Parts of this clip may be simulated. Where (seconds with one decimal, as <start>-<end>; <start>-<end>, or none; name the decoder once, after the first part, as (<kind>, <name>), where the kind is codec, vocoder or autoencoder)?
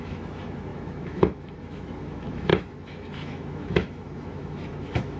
0.0-5.2 (autoencoder, DAC-VAE)